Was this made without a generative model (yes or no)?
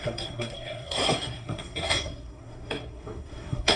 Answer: no